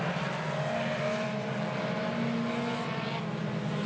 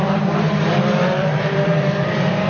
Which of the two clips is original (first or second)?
first